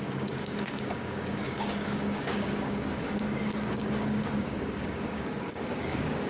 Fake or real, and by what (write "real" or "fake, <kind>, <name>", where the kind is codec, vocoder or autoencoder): fake, codec, DAC